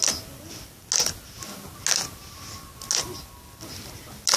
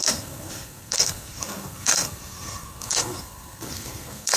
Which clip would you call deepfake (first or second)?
second